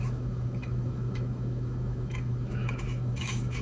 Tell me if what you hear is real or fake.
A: fake